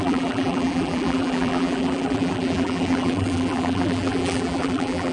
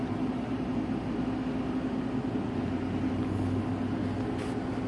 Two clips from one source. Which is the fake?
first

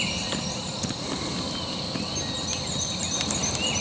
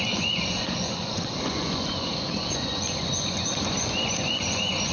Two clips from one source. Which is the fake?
second